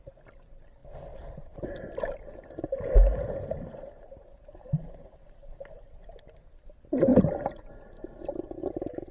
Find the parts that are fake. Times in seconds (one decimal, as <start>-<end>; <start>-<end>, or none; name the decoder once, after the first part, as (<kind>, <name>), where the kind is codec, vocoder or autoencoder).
0.8-2.4 (vocoder, BigVGAN v2); 7.1-8.7